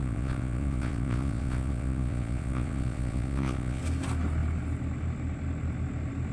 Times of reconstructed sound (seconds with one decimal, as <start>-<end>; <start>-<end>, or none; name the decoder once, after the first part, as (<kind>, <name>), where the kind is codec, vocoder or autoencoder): 0.0-3.8 (vocoder, Vocos)